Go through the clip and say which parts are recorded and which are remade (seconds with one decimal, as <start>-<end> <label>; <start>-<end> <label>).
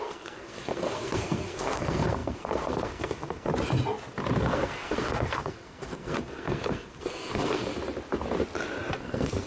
0.0-3.5 remade; 3.5-4.4 recorded; 4.4-7.7 remade; 7.7-8.9 recorded; 8.9-9.5 remade